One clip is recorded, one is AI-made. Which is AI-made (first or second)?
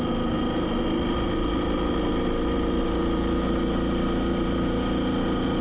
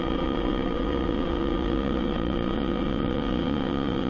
second